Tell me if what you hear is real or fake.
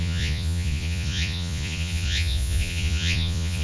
fake